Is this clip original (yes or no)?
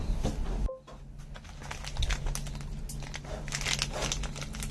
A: yes